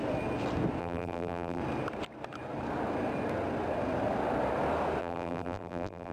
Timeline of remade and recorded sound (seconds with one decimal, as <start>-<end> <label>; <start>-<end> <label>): 0.0-0.8 recorded; 0.8-1.6 remade; 1.6-5.0 recorded; 5.0-6.1 remade